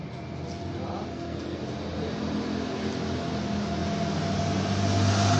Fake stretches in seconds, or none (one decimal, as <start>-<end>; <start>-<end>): 1.1-1.6